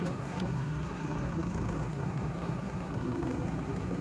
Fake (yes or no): yes